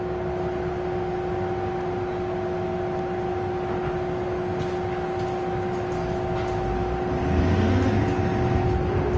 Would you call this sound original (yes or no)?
yes